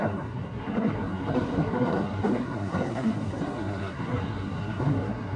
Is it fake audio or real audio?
fake